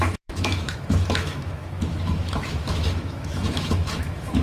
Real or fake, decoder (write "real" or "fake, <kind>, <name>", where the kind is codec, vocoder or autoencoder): fake, autoencoder, DAC-VAE